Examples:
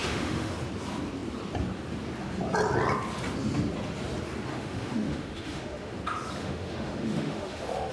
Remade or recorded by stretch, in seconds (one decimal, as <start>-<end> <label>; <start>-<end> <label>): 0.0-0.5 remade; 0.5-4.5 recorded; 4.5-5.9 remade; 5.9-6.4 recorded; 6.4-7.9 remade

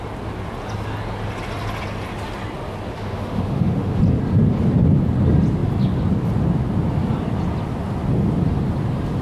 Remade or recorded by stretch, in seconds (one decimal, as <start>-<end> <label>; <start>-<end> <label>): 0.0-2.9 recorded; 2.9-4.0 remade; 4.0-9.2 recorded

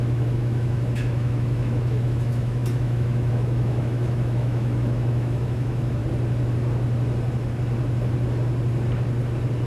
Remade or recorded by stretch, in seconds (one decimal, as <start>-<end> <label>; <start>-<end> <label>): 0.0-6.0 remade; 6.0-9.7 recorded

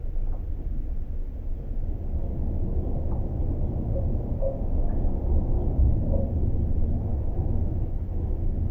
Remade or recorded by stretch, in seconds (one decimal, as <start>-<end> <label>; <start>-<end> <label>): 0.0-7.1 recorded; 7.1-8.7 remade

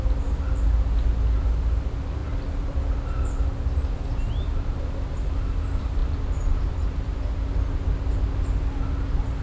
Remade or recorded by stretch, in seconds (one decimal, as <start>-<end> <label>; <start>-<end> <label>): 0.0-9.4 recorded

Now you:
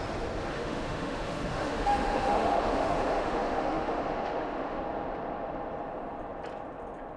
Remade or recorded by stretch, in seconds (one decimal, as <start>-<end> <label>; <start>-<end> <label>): 0.0-0.5 recorded; 0.5-4.8 remade; 4.8-7.2 recorded